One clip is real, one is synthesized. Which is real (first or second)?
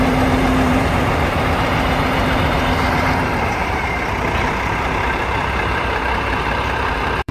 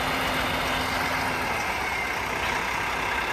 second